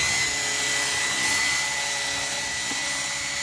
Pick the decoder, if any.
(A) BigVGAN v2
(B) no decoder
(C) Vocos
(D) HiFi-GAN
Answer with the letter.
B